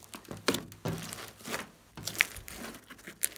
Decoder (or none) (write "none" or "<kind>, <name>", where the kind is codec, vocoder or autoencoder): none